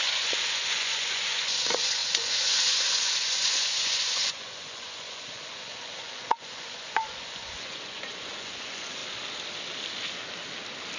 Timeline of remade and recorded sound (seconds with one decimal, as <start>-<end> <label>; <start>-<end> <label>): 0.0-9.0 remade; 9.0-11.0 recorded